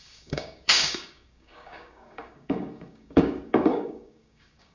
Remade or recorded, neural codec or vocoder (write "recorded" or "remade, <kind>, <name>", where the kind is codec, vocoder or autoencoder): remade, codec, DAC